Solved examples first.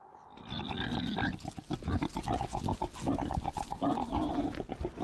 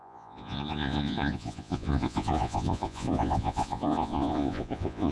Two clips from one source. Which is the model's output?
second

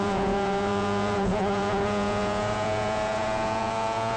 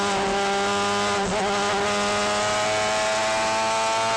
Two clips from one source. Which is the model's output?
first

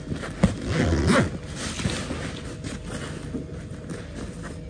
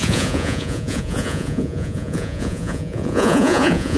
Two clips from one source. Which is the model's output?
second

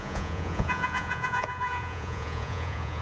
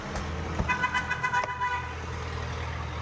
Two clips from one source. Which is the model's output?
first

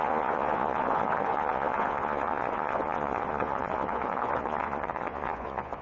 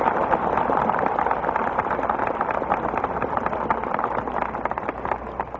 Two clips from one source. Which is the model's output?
first